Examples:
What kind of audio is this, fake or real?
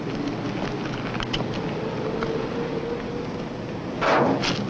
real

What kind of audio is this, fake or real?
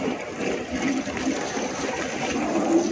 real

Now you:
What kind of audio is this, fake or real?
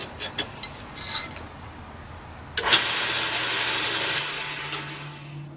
real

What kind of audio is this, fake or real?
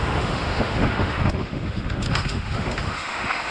fake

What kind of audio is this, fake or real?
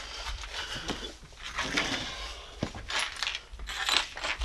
real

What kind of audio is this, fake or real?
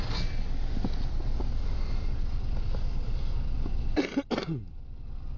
real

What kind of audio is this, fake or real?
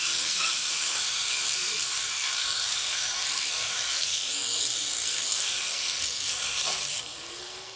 fake